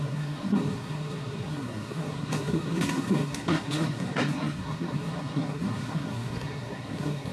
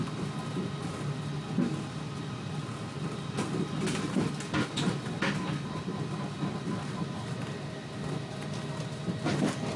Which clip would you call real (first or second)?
second